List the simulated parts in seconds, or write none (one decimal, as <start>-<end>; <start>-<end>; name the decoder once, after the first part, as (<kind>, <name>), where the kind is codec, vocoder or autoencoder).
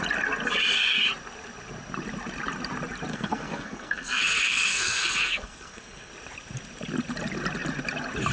3.1-6.1 (codec, SNAC)